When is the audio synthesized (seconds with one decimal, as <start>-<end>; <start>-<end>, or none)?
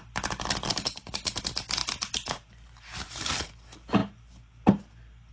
0.7-1.3